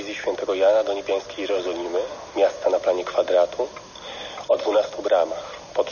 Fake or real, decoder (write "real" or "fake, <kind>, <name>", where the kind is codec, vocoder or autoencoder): real